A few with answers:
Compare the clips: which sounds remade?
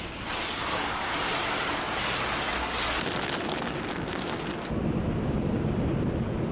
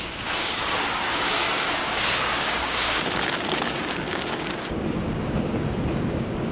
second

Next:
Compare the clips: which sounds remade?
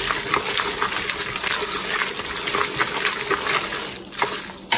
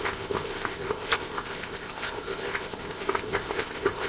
second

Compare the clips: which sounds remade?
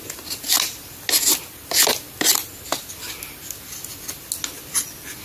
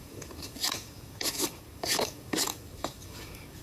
second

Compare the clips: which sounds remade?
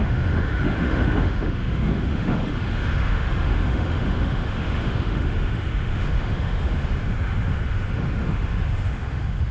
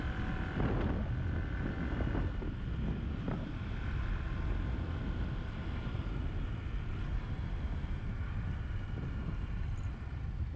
first